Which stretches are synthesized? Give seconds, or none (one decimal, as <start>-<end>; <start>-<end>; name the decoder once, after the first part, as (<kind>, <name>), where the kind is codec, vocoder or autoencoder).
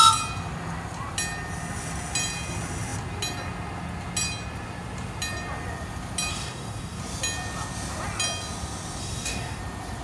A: 6.3-7.0 (codec, DAC); 9.0-9.6